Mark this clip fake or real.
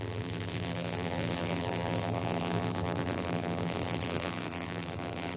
fake